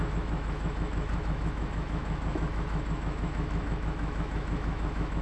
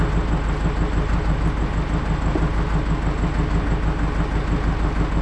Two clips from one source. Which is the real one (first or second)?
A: second